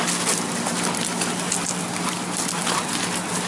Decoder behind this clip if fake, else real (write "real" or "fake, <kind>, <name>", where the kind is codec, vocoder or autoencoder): real